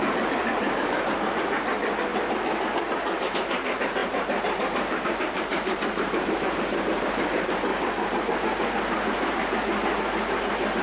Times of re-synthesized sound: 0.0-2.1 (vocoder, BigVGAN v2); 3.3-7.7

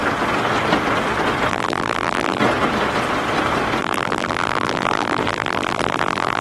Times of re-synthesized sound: 1.5-2.4 (vocoder, BigVGAN v2); 3.8-6.4

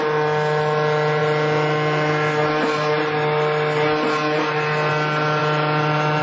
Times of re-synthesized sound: 5.4-6.2 (vocoder, BigVGAN v2)

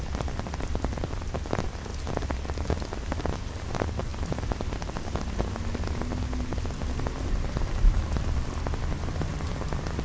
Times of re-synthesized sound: 0.0-1.9 (vocoder, BigVGAN v2); 3.5-4.1; 6.9-8.0; 8.9-10.0

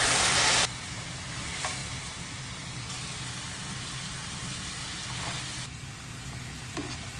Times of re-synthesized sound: none

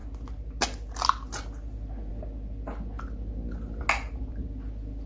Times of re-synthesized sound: none